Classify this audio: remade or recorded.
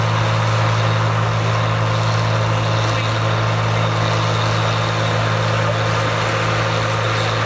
recorded